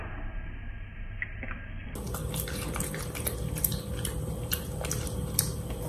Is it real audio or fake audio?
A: real